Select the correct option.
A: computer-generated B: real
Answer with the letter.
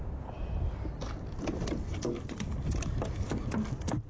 B